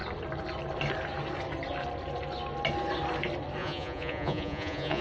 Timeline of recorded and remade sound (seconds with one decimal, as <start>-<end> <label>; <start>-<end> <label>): 0.0-3.6 recorded; 3.6-5.0 remade